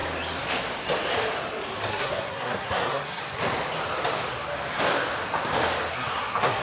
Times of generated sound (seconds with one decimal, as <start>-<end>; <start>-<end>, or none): 1.9-3.2; 5.9-6.6